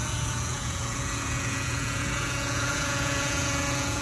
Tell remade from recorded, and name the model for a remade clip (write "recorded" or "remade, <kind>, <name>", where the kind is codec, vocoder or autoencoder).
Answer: remade, vocoder, Vocos